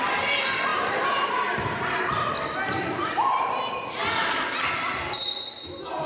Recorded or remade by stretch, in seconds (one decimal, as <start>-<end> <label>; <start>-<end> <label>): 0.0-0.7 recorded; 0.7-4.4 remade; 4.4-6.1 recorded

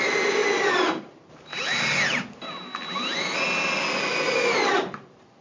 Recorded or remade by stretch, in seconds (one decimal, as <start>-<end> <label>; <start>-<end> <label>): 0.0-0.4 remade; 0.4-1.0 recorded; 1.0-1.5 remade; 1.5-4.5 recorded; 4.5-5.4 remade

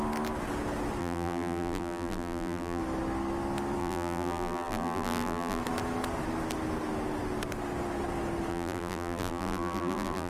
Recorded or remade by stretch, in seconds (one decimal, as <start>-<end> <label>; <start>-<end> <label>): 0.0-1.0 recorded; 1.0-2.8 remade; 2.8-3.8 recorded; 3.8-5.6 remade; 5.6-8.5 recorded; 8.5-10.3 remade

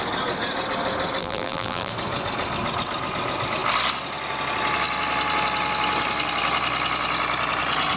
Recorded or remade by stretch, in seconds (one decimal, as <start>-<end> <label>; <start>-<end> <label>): 0.0-1.2 recorded; 1.2-1.9 remade; 1.9-8.0 recorded

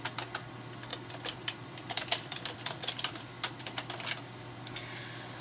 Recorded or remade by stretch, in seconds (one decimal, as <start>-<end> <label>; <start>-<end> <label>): 0.0-0.9 recorded; 0.9-3.6 remade; 3.6-5.4 recorded